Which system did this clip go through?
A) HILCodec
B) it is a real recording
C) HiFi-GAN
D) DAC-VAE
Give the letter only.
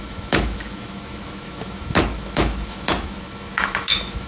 D